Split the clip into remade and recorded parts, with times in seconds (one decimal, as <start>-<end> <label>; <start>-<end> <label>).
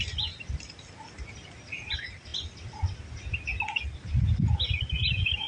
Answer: 0.0-5.5 recorded